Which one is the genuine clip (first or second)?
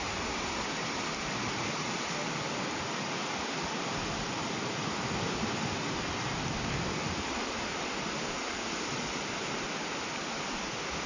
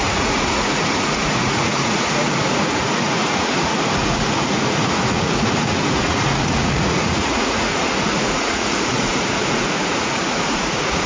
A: first